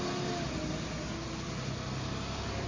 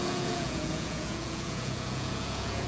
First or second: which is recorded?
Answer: first